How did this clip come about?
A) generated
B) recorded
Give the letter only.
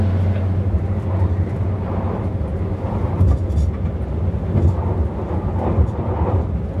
B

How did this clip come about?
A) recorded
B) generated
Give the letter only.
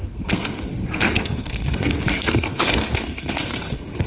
B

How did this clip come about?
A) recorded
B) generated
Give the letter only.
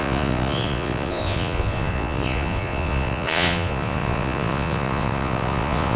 B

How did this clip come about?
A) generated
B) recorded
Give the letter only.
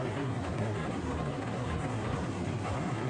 A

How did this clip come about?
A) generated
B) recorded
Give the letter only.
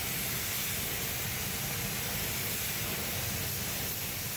B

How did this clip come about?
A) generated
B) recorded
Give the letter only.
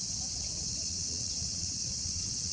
A